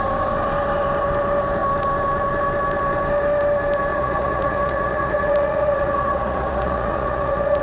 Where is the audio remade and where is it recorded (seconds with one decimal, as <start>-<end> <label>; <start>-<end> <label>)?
0.0-3.9 recorded; 3.9-7.6 remade